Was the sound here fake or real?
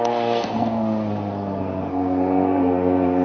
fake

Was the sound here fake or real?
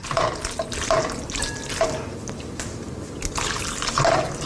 real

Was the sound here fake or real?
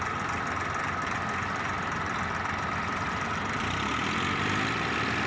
real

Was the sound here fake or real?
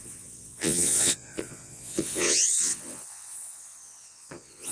fake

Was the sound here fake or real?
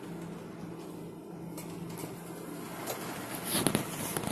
real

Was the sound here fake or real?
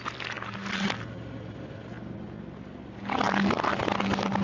real